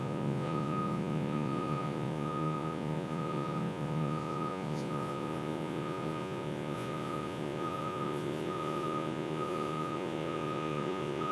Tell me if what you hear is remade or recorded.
remade